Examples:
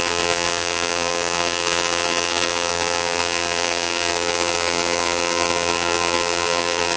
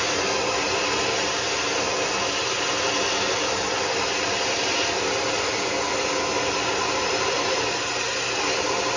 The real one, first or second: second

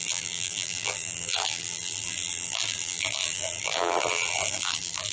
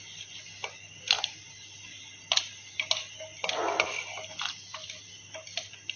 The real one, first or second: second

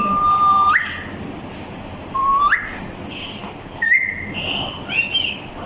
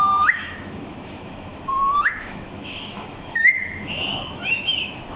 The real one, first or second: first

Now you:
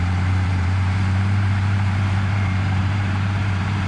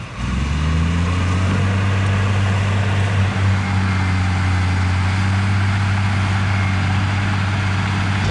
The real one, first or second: second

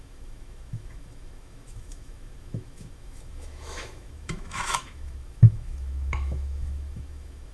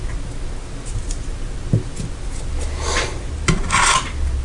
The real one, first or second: second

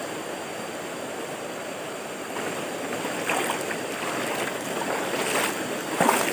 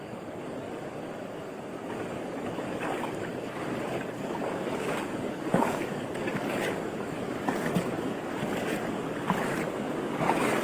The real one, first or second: first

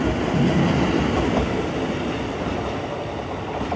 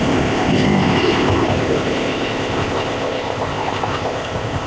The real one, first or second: first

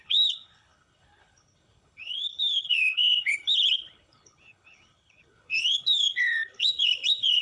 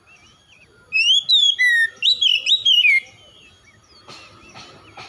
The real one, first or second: second